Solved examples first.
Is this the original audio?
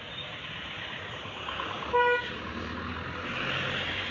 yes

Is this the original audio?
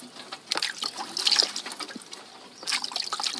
yes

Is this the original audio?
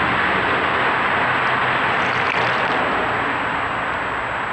yes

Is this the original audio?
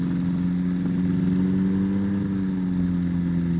yes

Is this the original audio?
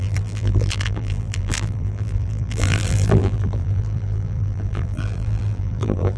no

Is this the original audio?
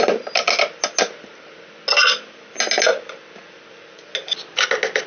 yes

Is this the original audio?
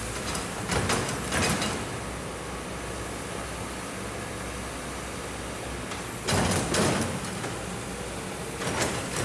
yes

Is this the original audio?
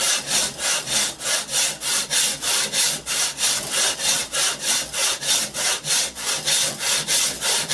yes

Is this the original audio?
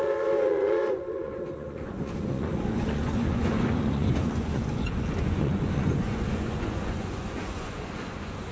no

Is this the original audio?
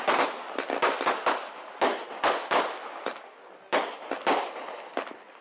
yes